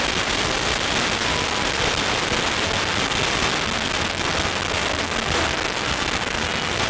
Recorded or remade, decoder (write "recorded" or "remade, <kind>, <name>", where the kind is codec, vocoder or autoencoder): recorded